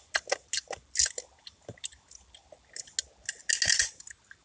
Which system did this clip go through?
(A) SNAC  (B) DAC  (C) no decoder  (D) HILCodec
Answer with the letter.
C